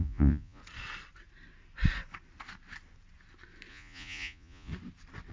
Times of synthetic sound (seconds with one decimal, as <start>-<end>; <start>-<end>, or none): 0.0-0.6; 3.7-4.7